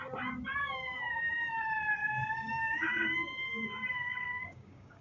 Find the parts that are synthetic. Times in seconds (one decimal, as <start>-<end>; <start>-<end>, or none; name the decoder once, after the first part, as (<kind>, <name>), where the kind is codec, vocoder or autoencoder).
0.5-1.3 (codec, DAC); 2.0-5.0